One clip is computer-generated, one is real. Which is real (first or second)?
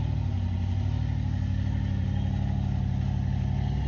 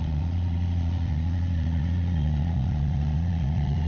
first